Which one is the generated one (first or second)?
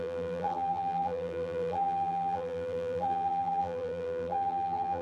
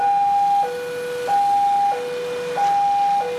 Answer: first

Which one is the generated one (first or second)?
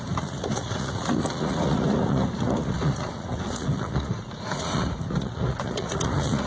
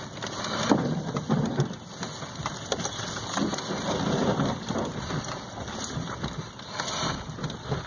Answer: first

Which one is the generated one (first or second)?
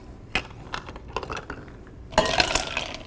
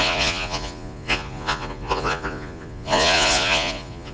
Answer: second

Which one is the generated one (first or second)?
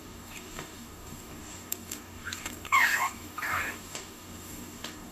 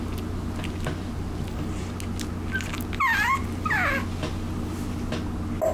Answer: first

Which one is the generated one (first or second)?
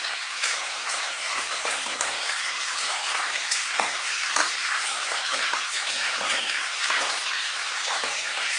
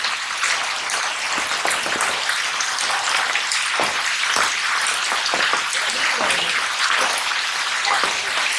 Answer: first